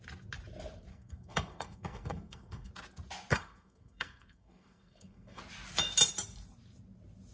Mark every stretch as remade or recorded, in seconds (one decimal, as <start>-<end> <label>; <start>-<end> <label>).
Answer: 0.0-0.9 recorded; 0.9-2.7 remade; 2.7-3.3 recorded; 3.3-5.4 remade; 5.4-7.3 recorded